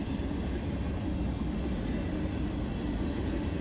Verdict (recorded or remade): recorded